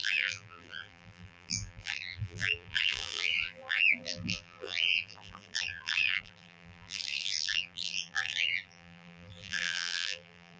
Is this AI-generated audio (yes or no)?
yes